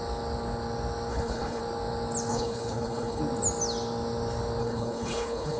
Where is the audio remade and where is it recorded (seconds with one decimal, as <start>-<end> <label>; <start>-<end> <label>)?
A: 0.0-1.1 recorded; 1.1-1.6 remade; 1.6-2.3 recorded; 2.3-3.2 remade; 3.2-4.6 recorded; 4.6-5.6 remade